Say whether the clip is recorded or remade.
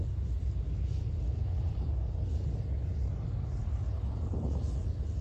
recorded